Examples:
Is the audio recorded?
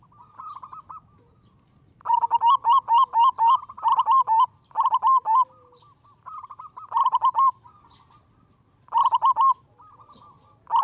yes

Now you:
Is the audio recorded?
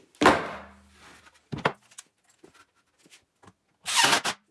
yes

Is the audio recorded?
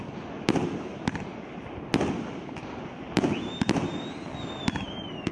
yes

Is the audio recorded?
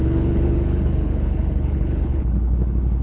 no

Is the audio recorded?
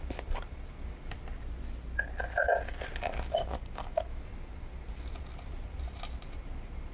yes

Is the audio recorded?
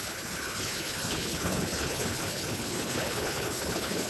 no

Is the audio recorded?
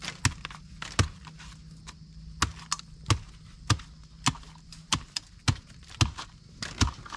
yes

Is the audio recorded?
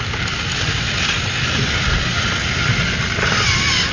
yes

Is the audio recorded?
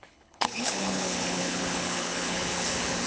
no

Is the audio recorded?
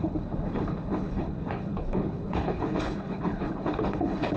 no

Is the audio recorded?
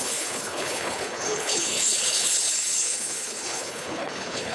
no